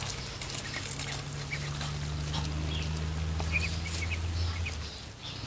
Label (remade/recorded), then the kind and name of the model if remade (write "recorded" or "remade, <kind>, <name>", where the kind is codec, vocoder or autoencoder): recorded